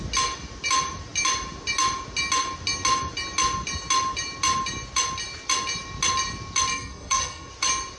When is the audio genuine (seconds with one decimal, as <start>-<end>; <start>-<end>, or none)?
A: 0.0-6.7; 7.5-8.0